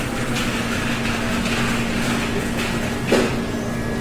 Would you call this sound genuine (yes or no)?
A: yes